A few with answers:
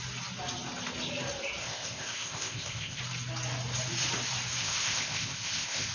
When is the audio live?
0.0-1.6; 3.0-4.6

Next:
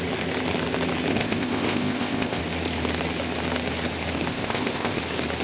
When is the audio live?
0.0-1.1; 2.4-4.3; 5.0-5.4

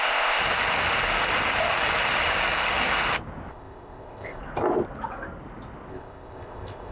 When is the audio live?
0.4-3.5; 4.4-5.9

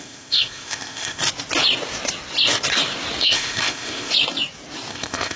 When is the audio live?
1.2-3.2; 4.1-4.9